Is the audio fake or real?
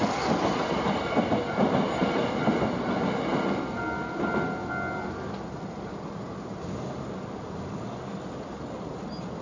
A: real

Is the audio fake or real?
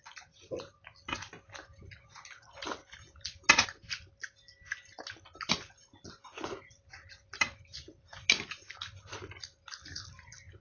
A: real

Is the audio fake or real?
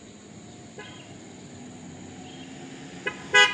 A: real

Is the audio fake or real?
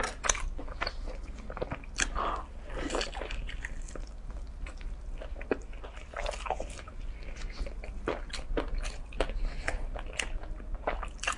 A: real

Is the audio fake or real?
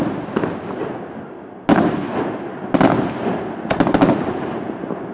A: real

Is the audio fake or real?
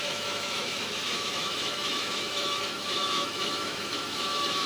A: fake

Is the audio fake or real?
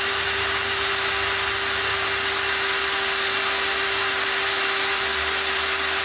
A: real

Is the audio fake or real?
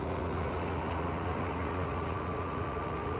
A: fake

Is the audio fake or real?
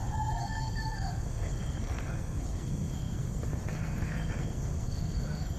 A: fake